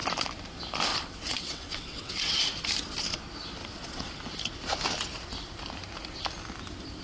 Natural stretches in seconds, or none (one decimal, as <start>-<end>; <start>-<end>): 0.0-0.9; 2.4-3.6; 4.1-7.0